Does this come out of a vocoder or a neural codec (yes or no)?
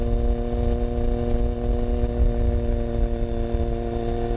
no